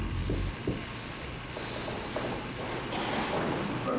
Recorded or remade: remade